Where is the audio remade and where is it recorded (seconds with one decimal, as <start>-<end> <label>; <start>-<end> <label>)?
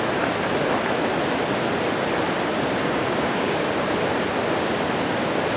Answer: 0.0-2.8 recorded; 2.8-3.7 remade; 3.7-5.6 recorded